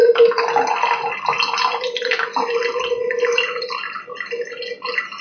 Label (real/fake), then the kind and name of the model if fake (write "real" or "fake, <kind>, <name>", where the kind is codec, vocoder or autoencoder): real